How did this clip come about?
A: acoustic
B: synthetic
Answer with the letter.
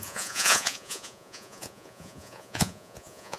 B